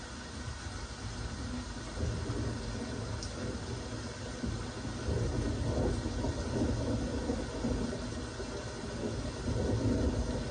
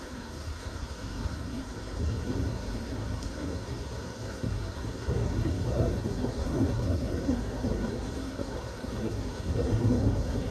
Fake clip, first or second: second